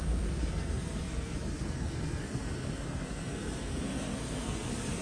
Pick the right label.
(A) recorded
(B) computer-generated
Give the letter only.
B